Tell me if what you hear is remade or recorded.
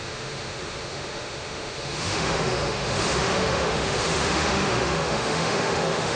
remade